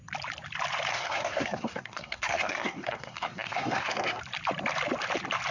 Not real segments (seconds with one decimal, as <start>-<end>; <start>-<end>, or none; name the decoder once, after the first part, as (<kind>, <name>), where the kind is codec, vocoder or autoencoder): 0.9-4.2 (codec, SNAC)